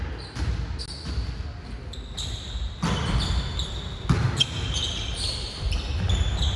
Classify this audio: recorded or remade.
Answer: recorded